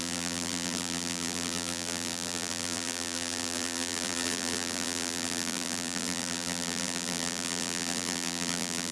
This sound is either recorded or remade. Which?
remade